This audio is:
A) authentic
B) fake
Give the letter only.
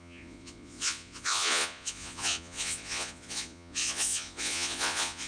B